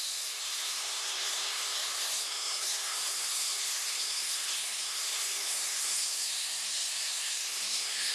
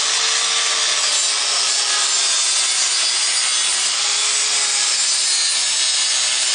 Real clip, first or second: second